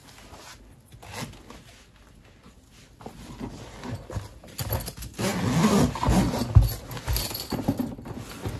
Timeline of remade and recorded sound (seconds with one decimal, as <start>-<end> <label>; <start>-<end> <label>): 0.0-8.6 recorded